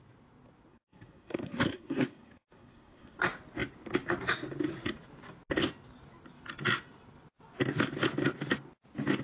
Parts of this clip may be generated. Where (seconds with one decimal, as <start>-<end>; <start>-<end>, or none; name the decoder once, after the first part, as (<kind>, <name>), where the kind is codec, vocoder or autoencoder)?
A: 0.7-3.2 (codec, SNAC)